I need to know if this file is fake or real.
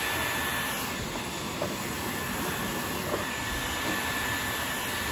real